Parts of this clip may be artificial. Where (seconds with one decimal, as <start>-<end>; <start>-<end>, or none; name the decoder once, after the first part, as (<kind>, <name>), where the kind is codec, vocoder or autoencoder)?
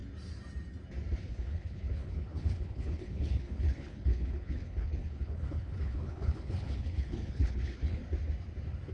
1.2-8.0 (codec, HILCodec)